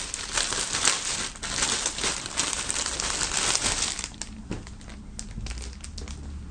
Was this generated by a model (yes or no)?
no